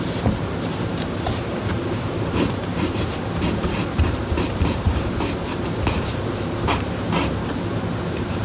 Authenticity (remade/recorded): remade